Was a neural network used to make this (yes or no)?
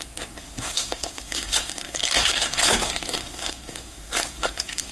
yes